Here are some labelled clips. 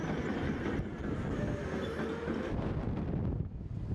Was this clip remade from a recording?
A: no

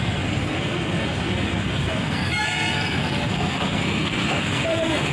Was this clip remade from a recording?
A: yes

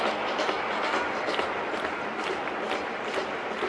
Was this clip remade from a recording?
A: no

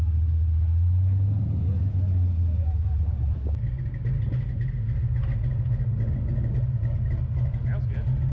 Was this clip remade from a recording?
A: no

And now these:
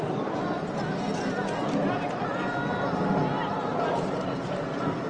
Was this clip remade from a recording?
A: yes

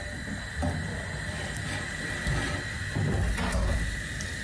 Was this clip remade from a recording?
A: no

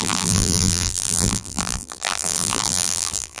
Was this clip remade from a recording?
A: yes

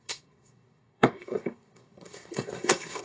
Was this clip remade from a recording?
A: yes